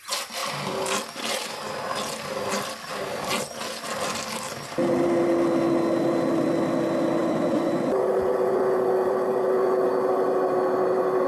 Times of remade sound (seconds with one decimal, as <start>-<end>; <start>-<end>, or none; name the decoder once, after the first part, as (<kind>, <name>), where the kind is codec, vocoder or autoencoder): 7.2-9.9 (vocoder, Vocos)